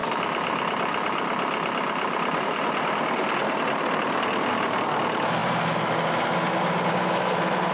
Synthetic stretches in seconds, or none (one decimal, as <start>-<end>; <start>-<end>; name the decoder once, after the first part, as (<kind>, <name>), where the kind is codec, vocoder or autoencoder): 0.0-4.5 (vocoder, BigVGAN v2)